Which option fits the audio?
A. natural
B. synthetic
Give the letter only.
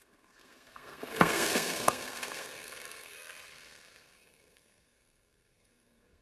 B